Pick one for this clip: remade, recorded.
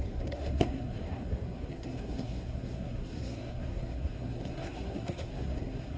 remade